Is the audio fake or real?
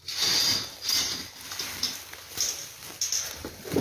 real